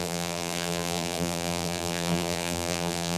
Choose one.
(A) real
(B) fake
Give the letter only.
B